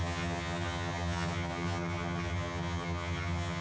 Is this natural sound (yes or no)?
no